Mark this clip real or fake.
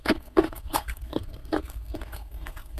fake